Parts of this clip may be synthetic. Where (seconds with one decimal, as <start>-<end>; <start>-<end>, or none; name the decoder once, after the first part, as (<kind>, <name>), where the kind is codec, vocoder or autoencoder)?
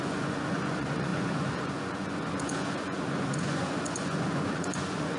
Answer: 0.0-5.2 (vocoder, Vocos)